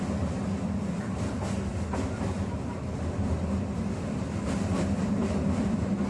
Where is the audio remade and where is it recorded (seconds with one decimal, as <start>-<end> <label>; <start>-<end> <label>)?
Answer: 0.0-6.1 recorded